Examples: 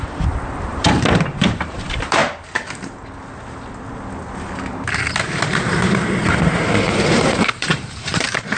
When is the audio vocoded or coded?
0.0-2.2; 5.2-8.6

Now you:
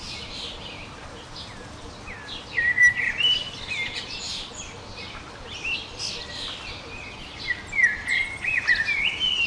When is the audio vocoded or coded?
none

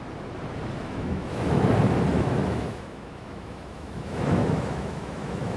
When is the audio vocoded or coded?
0.8-1.7; 2.1-5.6

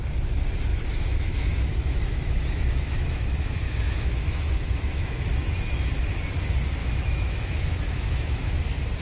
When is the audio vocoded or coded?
0.7-5.2; 6.8-8.6